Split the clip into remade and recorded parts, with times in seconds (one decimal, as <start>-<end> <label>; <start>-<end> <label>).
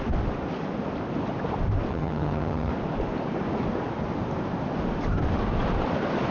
0.0-1.9 recorded; 1.9-2.7 remade; 2.7-6.3 recorded